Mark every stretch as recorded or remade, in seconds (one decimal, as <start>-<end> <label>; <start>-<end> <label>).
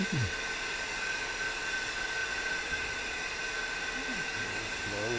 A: 0.0-2.2 recorded; 2.2-3.4 remade; 3.4-5.2 recorded